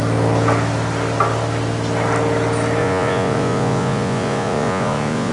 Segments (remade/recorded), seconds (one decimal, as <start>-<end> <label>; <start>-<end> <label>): 0.0-2.8 recorded; 2.8-5.3 remade

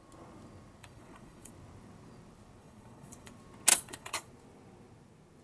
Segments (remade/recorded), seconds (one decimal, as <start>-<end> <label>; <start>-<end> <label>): 0.0-0.8 recorded; 0.8-1.5 remade; 1.5-2.6 recorded; 2.6-3.3 remade; 3.3-3.7 recorded; 3.7-4.3 remade; 4.3-5.4 recorded

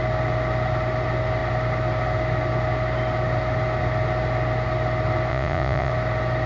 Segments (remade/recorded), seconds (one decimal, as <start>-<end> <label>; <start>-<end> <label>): 0.0-5.3 recorded; 5.3-5.9 remade; 5.9-6.5 recorded